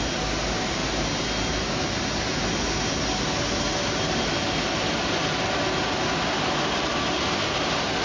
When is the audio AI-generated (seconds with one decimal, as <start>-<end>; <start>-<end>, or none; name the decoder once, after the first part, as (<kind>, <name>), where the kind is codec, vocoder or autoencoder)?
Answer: none